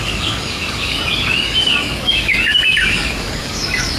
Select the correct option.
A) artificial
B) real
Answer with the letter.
A